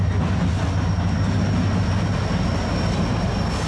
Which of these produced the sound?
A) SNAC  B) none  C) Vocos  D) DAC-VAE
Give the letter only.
B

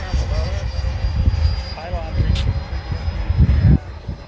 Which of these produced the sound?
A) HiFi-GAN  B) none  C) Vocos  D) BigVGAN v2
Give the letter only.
B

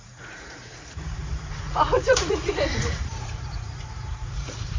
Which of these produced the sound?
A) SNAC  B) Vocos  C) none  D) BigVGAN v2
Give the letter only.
B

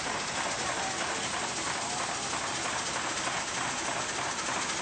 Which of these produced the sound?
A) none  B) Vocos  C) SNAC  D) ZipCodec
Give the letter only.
A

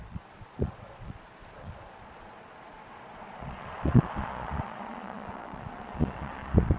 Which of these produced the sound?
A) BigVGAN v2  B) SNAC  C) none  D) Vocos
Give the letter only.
D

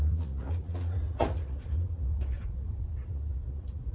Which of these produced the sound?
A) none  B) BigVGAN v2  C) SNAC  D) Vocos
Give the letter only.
D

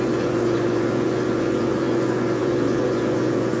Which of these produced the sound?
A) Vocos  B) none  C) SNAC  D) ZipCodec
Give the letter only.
A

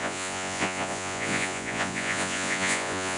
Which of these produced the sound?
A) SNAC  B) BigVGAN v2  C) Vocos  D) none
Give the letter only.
C